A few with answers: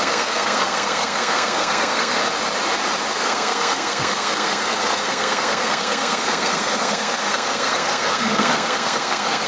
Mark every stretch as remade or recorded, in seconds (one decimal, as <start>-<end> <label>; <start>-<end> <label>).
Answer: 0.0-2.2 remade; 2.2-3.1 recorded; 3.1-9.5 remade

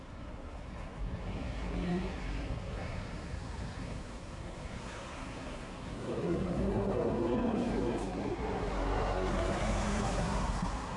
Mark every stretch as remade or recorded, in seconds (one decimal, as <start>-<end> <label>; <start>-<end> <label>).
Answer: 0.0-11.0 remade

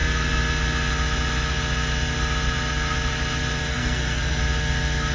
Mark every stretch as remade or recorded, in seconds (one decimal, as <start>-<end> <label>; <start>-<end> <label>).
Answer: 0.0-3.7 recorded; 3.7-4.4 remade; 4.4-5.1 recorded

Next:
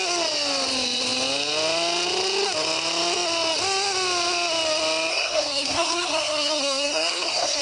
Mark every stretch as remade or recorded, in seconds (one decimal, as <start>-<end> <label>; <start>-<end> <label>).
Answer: 0.0-5.1 recorded; 5.1-7.6 remade